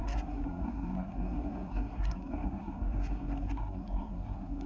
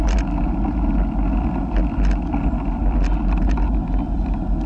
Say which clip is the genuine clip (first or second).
second